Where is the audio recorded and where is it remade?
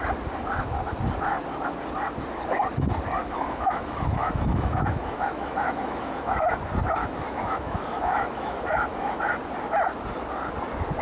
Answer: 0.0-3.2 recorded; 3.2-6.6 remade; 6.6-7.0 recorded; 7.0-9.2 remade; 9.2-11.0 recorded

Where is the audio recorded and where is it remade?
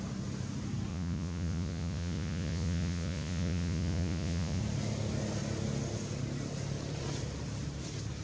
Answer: 0.0-0.9 recorded; 0.9-4.6 remade; 4.6-8.2 recorded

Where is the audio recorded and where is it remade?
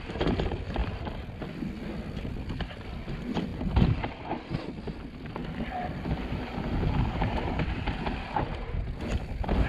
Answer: 0.0-0.8 recorded; 0.8-1.4 remade; 1.4-3.5 recorded; 3.5-4.6 remade; 4.6-5.4 recorded; 5.4-7.8 remade; 7.8-9.7 recorded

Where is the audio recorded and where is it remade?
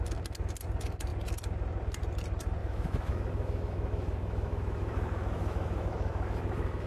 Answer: 0.0-2.6 recorded; 2.6-6.9 remade